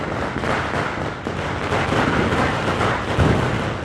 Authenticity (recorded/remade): recorded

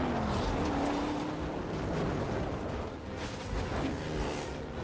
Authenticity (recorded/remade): recorded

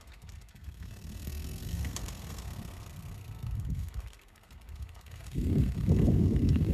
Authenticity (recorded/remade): remade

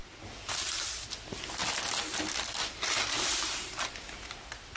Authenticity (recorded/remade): recorded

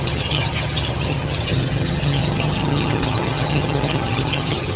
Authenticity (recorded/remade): remade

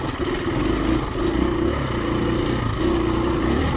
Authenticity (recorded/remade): recorded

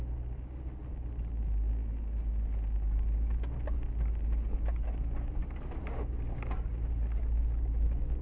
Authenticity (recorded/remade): recorded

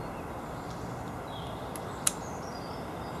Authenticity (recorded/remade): recorded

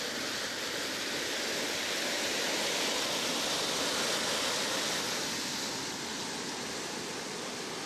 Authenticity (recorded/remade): recorded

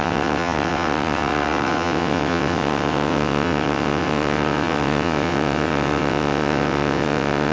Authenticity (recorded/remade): remade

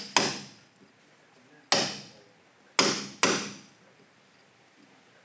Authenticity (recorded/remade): recorded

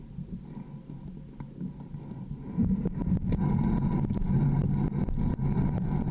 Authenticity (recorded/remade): recorded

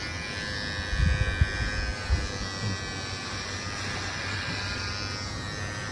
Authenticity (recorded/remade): recorded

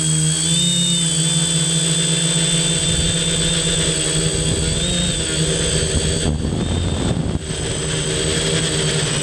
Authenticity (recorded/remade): recorded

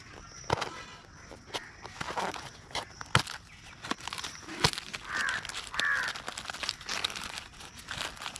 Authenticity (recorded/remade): recorded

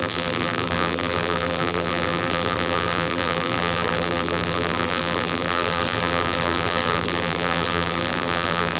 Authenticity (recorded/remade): remade